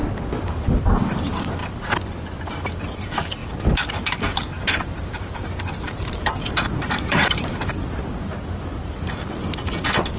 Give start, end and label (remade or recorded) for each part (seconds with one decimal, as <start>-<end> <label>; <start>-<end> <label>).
0.0-3.4 recorded; 3.4-7.6 remade; 7.6-10.2 recorded